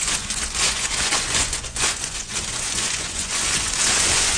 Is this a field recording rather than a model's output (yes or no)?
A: no